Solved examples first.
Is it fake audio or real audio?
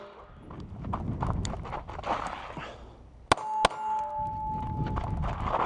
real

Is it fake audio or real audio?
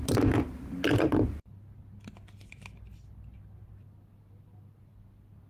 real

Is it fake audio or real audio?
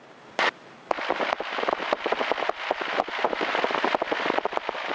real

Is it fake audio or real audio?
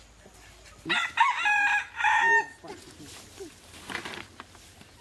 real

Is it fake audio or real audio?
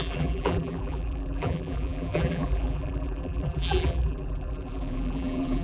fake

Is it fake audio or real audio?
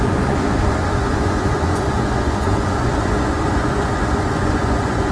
fake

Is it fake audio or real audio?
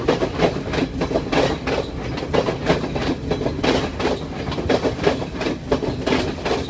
real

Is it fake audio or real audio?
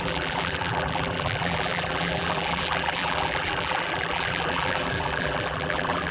fake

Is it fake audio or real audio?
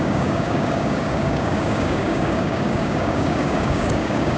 fake